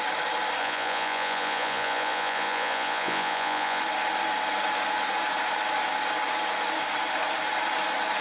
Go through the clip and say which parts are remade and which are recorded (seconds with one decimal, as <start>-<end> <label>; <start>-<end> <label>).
0.0-0.6 recorded; 0.6-3.8 remade; 3.8-8.2 recorded